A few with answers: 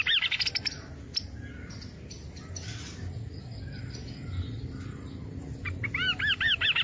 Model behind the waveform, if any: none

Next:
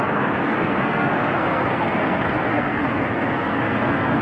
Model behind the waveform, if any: codec, SNAC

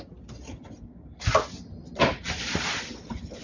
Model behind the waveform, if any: none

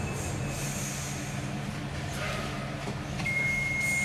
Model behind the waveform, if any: none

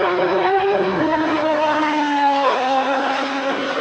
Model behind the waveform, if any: codec, SNAC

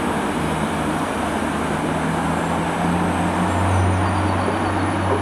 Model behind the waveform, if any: none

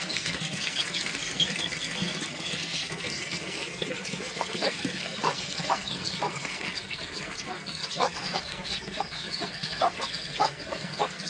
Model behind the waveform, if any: codec, SNAC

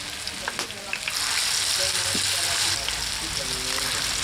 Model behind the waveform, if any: none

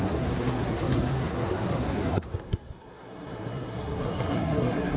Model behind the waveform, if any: codec, SNAC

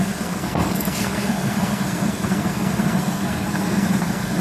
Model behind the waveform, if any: codec, SNAC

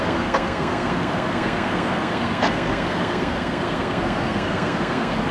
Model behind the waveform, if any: codec, SNAC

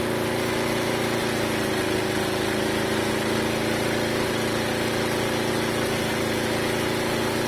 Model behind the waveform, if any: none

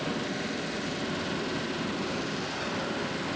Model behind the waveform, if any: none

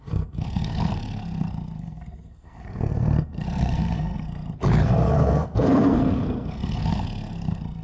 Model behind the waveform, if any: codec, SNAC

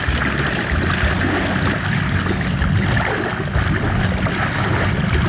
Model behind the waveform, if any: none